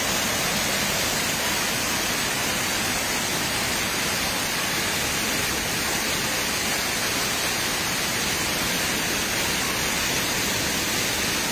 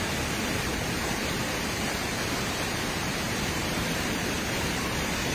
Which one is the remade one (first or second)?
second